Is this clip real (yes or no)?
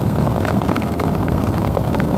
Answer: no